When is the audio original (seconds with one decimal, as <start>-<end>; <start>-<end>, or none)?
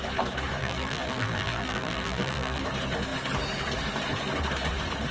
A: 0.0-0.6; 2.6-5.1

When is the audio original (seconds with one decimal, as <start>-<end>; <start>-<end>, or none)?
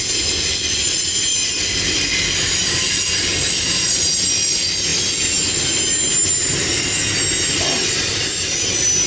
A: 0.0-9.1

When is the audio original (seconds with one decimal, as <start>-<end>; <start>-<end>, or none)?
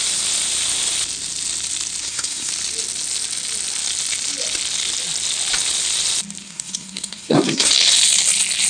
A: 0.0-2.0; 2.5-6.4; 7.7-8.7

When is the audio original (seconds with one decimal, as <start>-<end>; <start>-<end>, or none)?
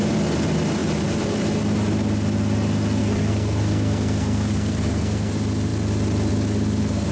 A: 0.0-3.0; 5.3-7.1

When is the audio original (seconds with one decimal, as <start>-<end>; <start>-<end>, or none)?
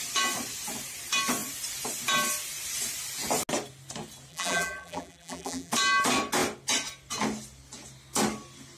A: 0.0-4.3; 5.7-8.8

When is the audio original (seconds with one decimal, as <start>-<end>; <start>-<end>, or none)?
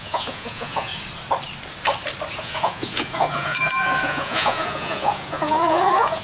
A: 0.9-2.4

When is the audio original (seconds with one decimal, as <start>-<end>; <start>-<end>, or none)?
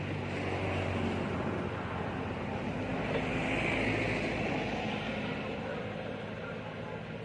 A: 0.0-7.2